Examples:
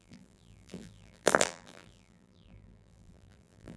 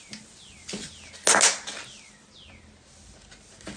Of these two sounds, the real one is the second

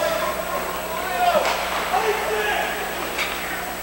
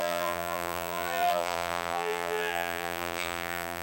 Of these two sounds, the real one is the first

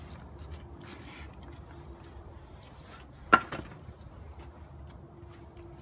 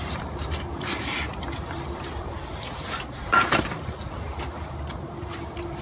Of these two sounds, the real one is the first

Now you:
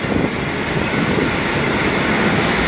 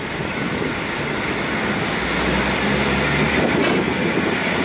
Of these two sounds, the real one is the second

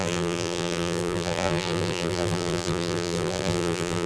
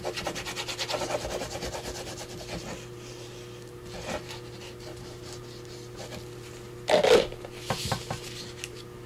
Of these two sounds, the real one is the second